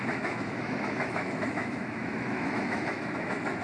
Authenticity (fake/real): fake